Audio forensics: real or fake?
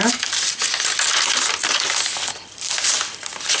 real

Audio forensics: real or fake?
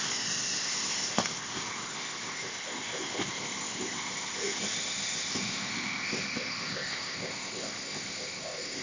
fake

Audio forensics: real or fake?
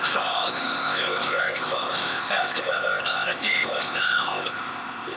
fake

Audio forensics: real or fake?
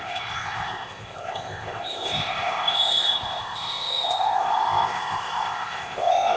fake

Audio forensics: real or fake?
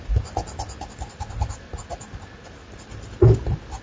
real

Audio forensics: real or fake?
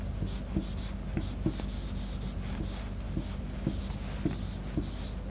real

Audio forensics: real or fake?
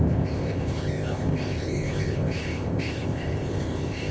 fake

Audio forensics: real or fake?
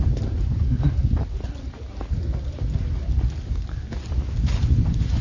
real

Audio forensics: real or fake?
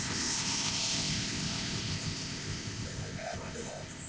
fake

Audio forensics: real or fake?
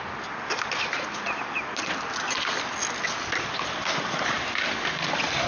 real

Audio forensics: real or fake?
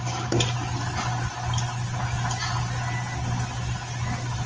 real